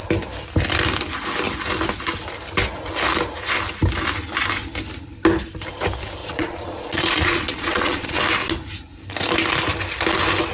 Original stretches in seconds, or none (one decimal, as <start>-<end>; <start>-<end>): 0.0-6.2; 8.2-10.5